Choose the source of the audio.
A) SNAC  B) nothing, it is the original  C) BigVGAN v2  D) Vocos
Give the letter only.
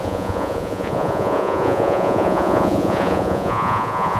D